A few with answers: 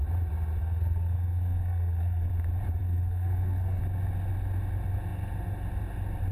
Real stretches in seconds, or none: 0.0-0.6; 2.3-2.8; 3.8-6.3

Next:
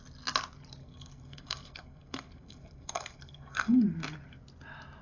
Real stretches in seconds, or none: 0.0-0.8; 3.8-5.0

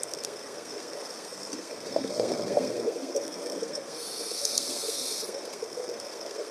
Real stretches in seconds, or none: none

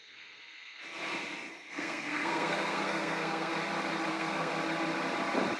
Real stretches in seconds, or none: 0.8-1.5; 3.5-4.1; 4.5-5.6

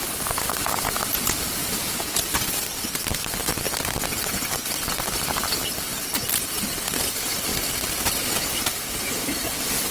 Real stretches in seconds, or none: 0.0-9.9

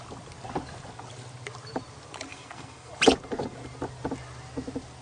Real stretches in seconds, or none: 0.0-2.3; 2.9-5.0

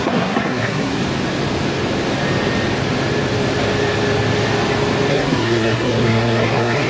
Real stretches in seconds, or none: 1.0-5.1